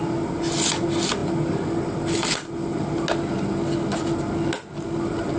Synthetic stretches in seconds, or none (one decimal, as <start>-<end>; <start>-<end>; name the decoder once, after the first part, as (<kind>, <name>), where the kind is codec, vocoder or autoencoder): none